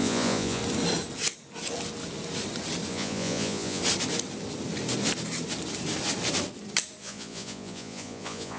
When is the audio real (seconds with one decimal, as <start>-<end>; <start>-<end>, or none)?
0.6-2.9; 3.8-7.0